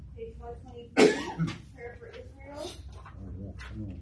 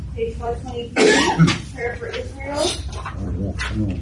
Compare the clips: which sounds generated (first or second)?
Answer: second